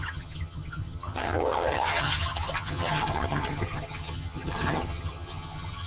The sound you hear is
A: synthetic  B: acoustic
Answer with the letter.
A